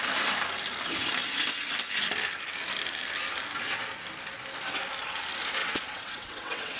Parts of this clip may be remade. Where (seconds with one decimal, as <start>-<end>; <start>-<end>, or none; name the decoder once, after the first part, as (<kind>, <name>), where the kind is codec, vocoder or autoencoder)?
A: 5.6-6.8 (vocoder, WaveNeXt)